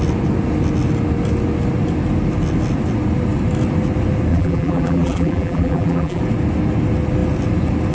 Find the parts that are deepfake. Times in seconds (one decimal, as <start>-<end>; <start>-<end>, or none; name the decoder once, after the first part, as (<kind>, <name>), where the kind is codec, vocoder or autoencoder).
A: 4.3-6.2 (vocoder, BigVGAN v2)